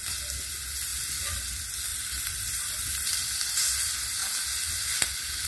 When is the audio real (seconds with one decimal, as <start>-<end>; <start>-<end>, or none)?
0.0-0.9; 1.5-1.9; 3.8-5.5